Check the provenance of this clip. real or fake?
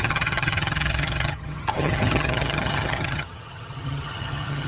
fake